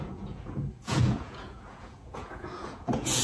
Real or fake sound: fake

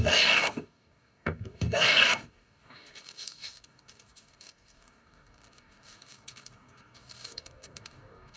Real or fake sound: fake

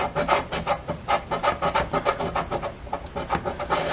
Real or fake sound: real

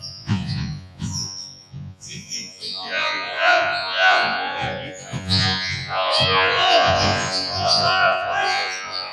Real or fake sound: fake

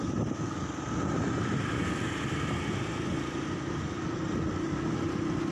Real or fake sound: real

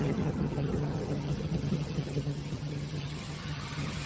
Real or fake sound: fake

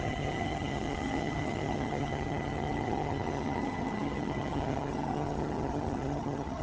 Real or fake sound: fake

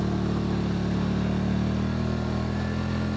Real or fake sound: real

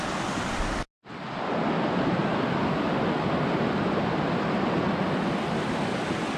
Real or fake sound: real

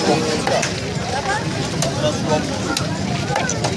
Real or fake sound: real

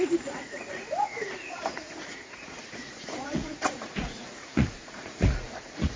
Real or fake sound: fake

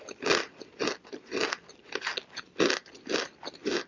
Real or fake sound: real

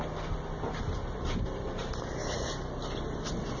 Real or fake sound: real